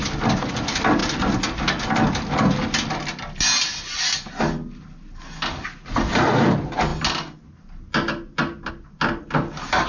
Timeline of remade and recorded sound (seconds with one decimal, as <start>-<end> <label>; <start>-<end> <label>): 0.0-9.9 recorded